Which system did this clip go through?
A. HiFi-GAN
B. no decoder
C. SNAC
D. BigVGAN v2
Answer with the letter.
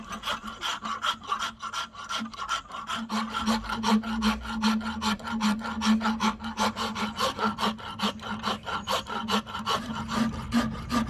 B